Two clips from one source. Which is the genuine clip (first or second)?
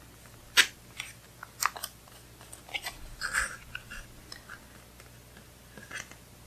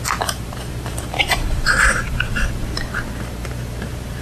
first